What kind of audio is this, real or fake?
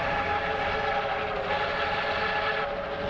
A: real